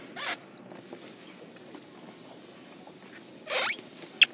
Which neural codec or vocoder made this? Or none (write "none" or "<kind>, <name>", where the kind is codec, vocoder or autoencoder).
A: none